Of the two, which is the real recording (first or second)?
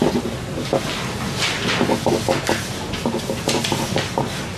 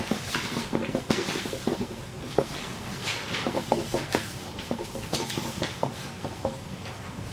first